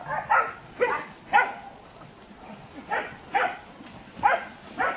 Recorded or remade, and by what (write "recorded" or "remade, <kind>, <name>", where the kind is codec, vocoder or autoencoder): recorded